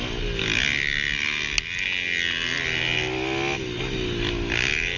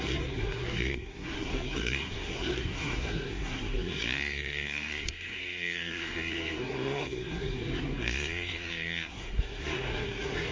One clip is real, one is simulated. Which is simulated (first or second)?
second